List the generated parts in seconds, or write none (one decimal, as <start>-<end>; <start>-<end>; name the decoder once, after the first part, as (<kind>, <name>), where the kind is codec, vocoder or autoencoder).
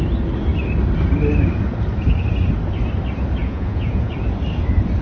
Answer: 3.4-4.1 (vocoder, Vocos)